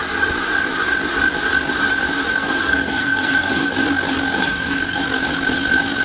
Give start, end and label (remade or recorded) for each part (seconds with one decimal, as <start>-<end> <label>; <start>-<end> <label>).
0.0-2.3 recorded; 2.3-3.7 remade; 3.7-4.4 recorded; 4.4-5.0 remade; 5.0-6.0 recorded